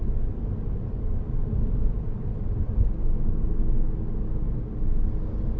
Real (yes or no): yes